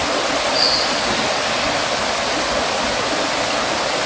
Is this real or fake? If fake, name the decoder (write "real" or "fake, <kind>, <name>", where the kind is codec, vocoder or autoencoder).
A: real